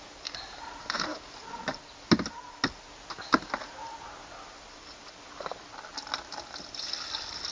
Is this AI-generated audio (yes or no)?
no